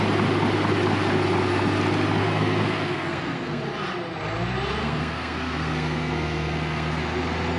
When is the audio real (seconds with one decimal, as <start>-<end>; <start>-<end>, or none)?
0.0-2.2; 3.6-4.8; 7.0-7.6